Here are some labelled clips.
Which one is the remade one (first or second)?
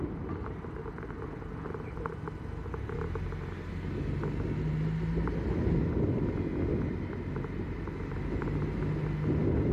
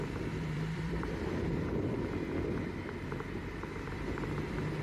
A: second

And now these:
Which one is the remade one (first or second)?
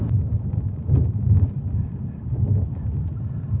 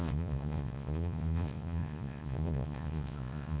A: second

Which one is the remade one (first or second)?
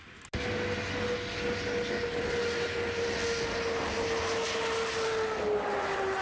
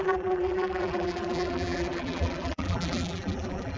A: second